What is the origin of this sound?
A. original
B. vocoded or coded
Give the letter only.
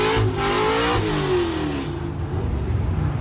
A